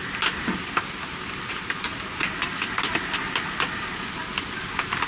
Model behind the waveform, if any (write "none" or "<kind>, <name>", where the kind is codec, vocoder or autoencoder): none